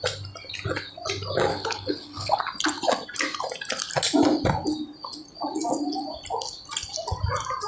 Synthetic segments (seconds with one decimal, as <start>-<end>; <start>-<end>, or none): 1.5-2.4